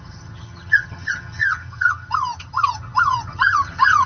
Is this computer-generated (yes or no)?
yes